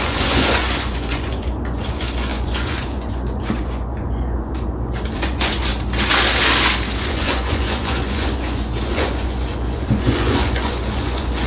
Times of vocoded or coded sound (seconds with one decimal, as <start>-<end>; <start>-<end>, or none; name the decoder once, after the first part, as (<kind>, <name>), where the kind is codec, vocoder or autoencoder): 0.0-5.7 (vocoder, Vocos); 7.0-11.5